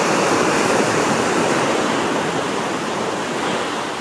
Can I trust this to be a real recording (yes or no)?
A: yes